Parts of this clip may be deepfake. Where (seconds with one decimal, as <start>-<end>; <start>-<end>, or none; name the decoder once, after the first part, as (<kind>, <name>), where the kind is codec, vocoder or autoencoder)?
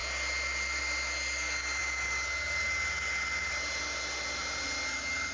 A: none